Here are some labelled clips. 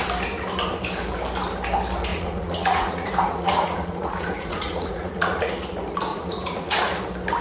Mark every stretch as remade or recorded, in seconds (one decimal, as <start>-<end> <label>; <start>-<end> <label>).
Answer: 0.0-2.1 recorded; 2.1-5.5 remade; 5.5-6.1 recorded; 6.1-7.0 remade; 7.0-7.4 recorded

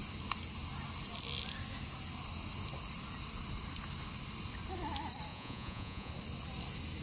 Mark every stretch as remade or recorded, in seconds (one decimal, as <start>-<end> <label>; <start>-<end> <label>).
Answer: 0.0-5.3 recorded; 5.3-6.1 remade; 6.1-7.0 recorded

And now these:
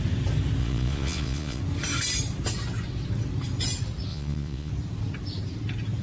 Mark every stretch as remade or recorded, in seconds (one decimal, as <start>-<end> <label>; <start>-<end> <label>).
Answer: 0.0-0.6 recorded; 0.6-1.6 remade; 1.6-4.1 recorded; 4.1-4.7 remade; 4.7-6.0 recorded

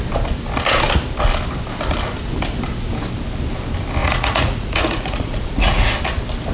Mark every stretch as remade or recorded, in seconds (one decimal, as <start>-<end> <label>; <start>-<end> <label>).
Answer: 0.0-4.0 recorded; 4.0-5.9 remade; 5.9-6.5 recorded

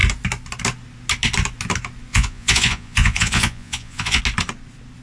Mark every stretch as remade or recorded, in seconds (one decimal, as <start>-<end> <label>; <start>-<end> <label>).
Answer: 0.0-2.1 recorded; 2.1-4.2 remade; 4.2-5.0 recorded

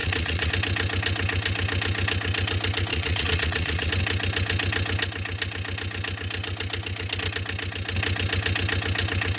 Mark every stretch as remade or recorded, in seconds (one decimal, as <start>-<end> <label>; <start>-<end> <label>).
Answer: 0.0-0.5 remade; 0.5-2.9 recorded; 2.9-3.9 remade; 3.9-9.4 recorded

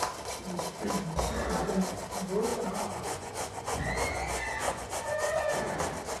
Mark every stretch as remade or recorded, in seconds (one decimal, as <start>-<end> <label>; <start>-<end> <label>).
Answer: 0.0-2.5 recorded; 2.5-5.8 remade; 5.8-6.2 recorded